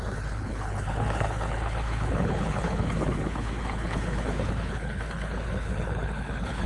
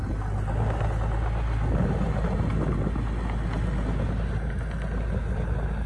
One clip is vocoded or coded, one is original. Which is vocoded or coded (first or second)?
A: first